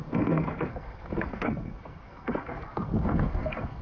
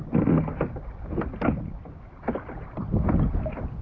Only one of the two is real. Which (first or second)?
second